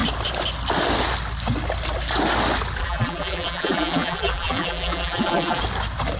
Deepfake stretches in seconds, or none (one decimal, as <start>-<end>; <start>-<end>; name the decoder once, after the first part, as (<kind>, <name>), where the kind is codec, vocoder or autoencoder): 2.8-5.6 (vocoder, BigVGAN v2)